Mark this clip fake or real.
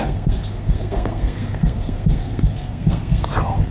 fake